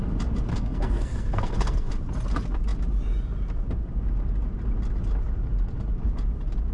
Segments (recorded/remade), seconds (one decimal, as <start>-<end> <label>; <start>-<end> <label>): 0.0-0.5 recorded; 0.5-1.9 remade; 1.9-6.7 recorded

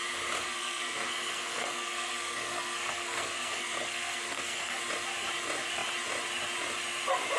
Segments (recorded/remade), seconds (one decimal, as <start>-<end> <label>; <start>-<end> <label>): 0.0-0.4 recorded; 0.4-4.8 remade; 4.8-7.4 recorded